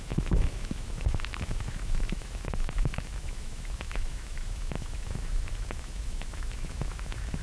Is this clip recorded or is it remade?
remade